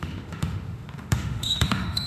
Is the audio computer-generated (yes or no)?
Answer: yes